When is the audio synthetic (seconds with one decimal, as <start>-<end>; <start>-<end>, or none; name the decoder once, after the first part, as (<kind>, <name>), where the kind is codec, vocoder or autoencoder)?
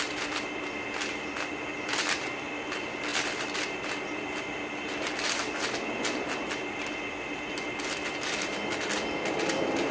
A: none